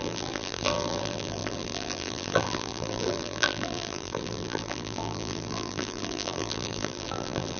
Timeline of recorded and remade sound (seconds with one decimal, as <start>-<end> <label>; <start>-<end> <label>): 0.0-7.6 remade